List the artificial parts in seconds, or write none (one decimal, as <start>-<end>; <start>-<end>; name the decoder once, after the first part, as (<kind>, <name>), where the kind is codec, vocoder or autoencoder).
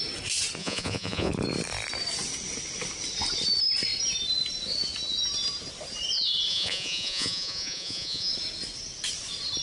0.6-1.3 (vocoder, Vocos); 6.5-8.3